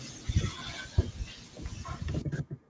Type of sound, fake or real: real